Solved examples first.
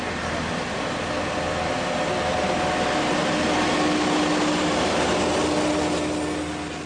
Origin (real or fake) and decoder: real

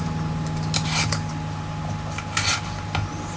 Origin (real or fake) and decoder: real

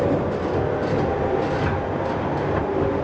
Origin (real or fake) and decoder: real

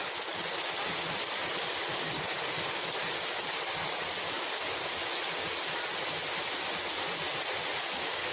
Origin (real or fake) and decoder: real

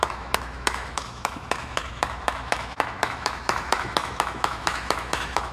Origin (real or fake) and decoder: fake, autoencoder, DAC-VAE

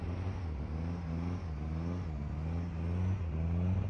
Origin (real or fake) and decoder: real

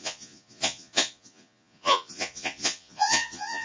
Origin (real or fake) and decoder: fake, vocoder, Vocos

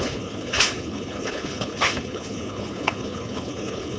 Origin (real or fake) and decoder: fake, codec, HILCodec